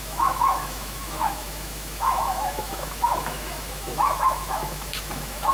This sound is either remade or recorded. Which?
remade